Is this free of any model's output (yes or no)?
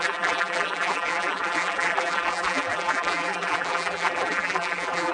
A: no